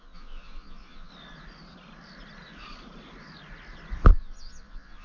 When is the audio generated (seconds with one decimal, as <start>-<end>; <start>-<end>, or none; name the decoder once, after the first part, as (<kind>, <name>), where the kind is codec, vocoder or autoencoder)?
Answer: 0.0-1.1 (vocoder, Vocos); 4.1-5.0